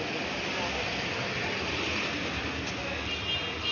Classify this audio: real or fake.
real